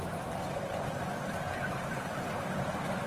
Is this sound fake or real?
real